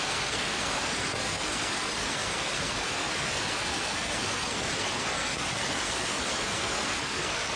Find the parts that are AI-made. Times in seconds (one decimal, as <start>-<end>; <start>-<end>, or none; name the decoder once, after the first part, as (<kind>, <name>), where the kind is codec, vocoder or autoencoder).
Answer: 0.0-7.6 (codec, SNAC)